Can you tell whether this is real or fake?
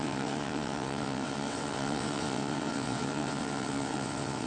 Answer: fake